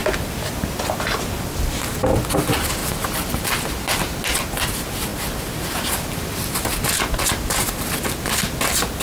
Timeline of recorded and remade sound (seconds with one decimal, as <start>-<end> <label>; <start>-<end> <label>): 0.0-2.8 recorded; 2.8-3.4 remade; 3.4-9.0 recorded